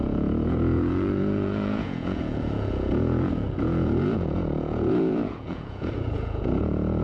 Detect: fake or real fake